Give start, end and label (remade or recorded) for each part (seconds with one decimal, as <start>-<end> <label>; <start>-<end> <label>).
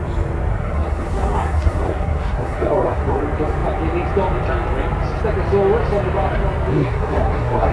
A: 0.0-0.5 recorded; 0.5-3.2 remade; 3.2-6.7 recorded; 6.7-7.7 remade